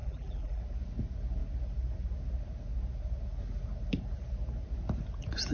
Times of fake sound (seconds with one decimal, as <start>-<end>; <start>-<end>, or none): 0.0-0.6